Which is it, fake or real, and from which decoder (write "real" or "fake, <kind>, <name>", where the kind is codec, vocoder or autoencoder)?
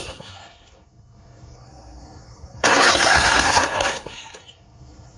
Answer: fake, codec, SNAC